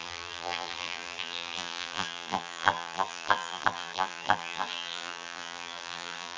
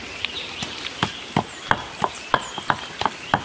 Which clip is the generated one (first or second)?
first